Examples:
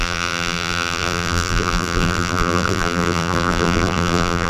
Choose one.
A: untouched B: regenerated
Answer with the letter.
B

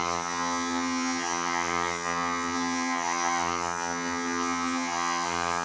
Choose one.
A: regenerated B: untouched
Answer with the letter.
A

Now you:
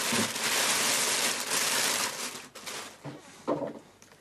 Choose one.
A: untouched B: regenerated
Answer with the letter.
A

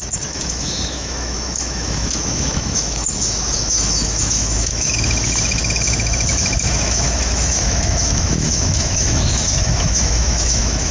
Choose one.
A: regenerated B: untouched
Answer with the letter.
A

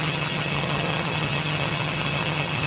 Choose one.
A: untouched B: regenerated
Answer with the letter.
B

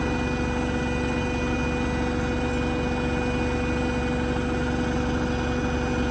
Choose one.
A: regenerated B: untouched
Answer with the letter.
B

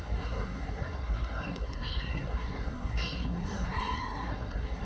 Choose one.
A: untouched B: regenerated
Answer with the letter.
B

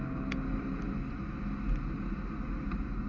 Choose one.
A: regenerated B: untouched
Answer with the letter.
B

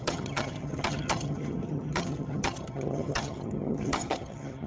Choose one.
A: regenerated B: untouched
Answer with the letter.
A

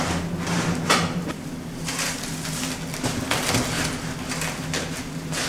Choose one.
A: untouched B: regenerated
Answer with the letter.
A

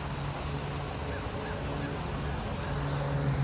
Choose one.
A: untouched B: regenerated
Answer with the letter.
A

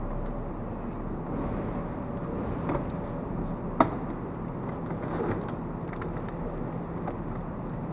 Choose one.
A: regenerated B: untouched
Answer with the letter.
B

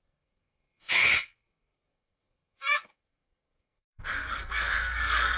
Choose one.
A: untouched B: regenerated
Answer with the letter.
B